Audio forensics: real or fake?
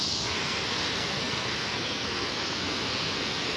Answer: fake